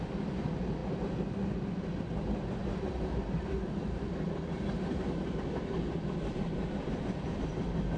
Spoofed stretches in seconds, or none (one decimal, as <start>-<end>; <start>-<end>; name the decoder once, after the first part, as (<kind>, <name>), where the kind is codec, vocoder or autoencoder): none